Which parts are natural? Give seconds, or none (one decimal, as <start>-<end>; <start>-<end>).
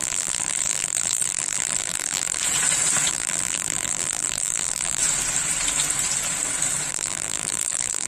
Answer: 2.4-3.1; 5.0-6.9